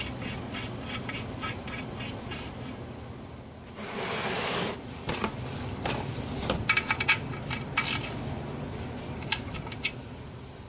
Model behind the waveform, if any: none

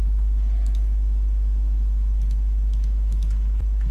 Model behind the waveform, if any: autoencoder, DAC-VAE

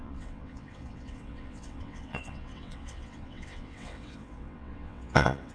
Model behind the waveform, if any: vocoder, WaveNeXt